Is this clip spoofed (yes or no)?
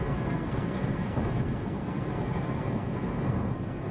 yes